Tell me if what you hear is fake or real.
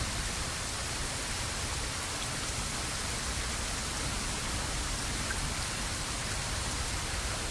real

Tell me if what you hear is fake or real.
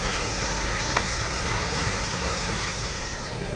fake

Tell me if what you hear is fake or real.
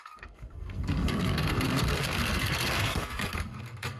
fake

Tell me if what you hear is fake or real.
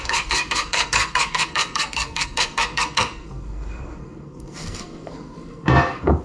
fake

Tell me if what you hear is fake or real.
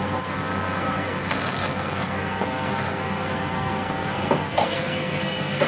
fake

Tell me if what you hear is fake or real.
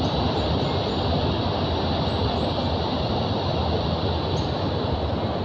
real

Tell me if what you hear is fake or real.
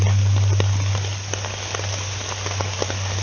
real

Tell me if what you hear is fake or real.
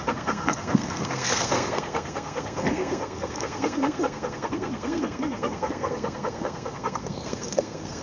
fake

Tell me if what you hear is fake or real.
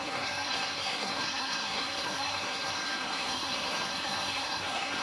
fake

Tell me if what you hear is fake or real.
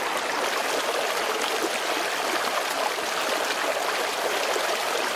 real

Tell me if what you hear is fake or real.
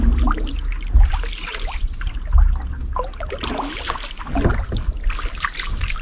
real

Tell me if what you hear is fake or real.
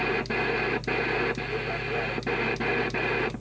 real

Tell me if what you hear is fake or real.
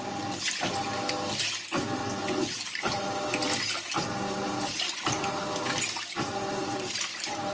real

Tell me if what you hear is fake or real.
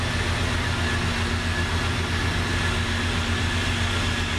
real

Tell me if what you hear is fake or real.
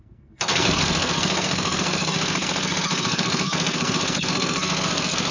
fake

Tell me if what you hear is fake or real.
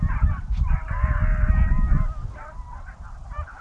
real